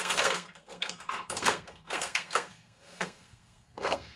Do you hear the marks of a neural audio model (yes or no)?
yes